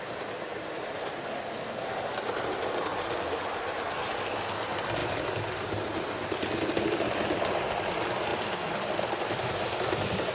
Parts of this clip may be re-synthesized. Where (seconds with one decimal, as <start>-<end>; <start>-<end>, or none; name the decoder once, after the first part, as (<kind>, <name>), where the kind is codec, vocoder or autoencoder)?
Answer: none